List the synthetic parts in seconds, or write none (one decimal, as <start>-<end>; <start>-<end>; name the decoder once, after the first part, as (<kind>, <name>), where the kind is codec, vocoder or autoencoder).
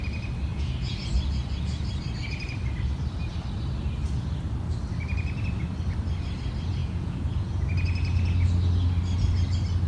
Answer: 0.5-1.1 (vocoder, Vocos); 6.8-7.6